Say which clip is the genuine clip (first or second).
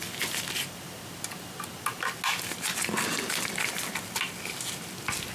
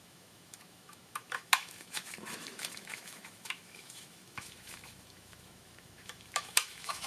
first